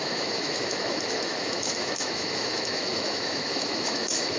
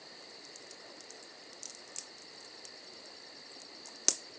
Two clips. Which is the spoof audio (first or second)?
first